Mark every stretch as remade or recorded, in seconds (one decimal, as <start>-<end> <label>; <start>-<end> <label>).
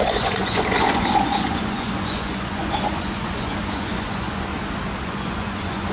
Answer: 0.0-4.5 remade; 4.5-5.0 recorded; 5.0-5.9 remade